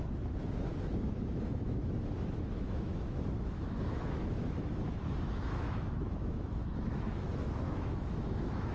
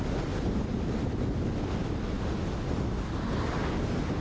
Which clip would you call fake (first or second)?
first